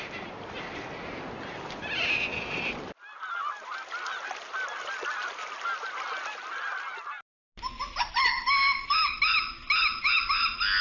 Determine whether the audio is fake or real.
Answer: real